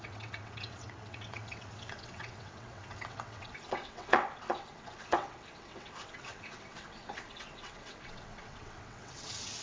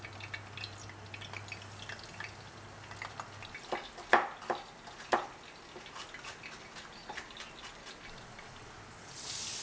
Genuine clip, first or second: second